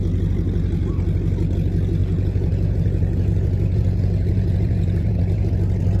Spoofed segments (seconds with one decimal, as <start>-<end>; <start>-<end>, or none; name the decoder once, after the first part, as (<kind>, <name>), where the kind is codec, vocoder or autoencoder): 2.0-5.5 (vocoder, Vocos)